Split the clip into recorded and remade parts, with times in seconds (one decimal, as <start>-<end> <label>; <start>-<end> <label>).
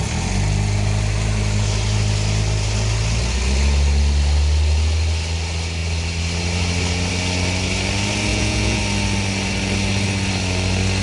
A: 0.0-8.3 recorded; 8.3-8.8 remade; 8.8-11.0 recorded